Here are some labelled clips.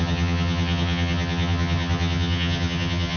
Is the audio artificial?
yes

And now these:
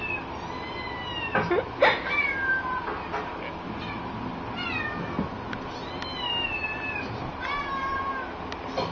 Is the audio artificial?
no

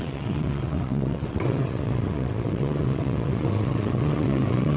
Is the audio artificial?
yes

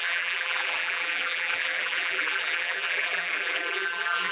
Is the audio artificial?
yes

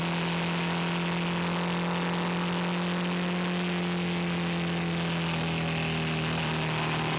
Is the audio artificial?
no